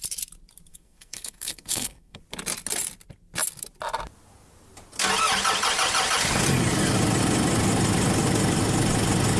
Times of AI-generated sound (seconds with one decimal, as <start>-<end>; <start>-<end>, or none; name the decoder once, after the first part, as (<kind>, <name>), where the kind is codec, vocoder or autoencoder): 0.7-2.2 (codec, SNAC)